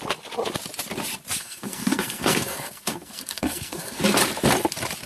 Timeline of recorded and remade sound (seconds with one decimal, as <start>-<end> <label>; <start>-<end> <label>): 0.0-1.4 recorded; 1.4-4.0 remade; 4.0-5.1 recorded